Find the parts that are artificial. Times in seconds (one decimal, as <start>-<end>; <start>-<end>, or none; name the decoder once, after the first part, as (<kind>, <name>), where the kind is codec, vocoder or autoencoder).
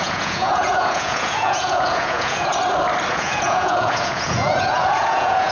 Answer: 0.0-2.5 (vocoder, Vocos); 3.1-5.5